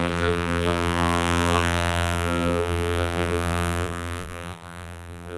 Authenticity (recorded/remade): remade